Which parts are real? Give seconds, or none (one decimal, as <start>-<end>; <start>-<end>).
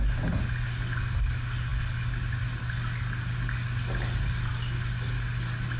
0.0-5.8